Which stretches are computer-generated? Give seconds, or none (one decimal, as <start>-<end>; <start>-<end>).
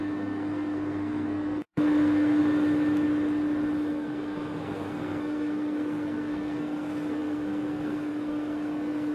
0.0-2.4; 3.9-9.1